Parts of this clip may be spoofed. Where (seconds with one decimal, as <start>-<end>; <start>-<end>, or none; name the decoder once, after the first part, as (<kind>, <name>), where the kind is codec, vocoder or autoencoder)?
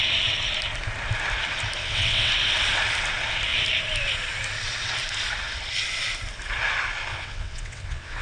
1.8-2.3 (vocoder, WaveNeXt); 7.1-8.2